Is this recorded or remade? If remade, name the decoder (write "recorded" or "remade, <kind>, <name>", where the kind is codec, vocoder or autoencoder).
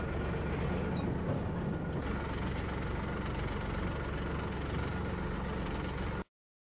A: recorded